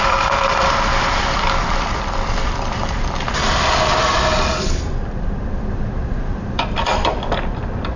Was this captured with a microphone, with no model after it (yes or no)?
no